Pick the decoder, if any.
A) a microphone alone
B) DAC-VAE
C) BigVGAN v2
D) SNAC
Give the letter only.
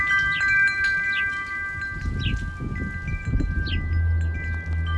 A